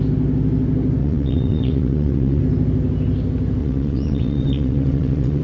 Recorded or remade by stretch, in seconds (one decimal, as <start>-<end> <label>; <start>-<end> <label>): 0.0-1.0 recorded; 1.0-2.4 remade; 2.4-3.6 recorded; 3.6-5.4 remade